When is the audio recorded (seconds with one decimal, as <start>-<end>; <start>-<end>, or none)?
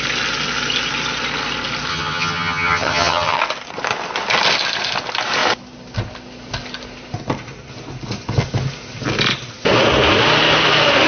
0.0-1.9; 3.4-11.1